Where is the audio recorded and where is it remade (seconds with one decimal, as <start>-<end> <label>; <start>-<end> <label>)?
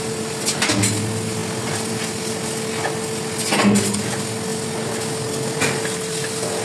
0.0-6.6 recorded